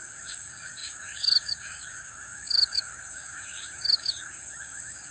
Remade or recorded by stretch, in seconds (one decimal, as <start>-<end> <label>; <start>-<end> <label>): 0.0-5.1 remade